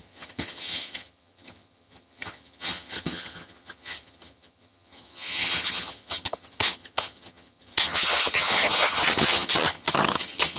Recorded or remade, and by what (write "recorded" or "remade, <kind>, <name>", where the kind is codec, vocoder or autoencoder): remade, vocoder, HiFi-GAN